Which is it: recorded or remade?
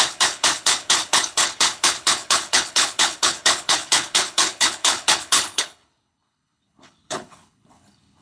remade